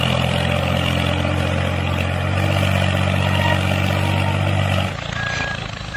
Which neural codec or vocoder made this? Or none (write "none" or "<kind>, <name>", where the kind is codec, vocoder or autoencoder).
none